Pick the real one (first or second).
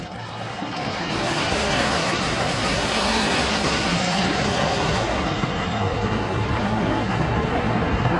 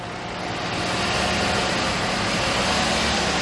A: second